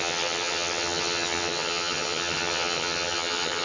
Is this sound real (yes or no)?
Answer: no